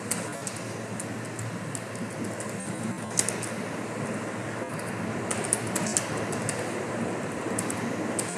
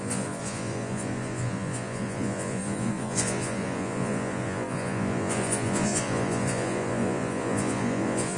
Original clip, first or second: first